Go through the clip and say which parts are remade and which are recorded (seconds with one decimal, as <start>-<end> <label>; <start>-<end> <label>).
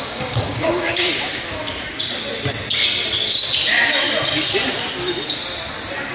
0.0-1.3 remade; 1.3-1.9 recorded; 1.9-2.3 remade; 2.3-6.1 recorded